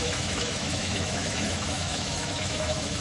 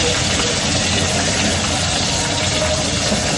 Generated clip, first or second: first